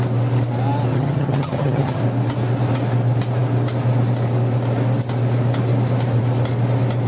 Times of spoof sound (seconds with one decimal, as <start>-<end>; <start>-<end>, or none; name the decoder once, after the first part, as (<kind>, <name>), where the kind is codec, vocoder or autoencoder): 0.9-2.0 (vocoder, HiFi-GAN)